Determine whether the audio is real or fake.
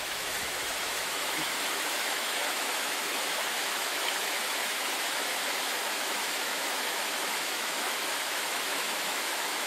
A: fake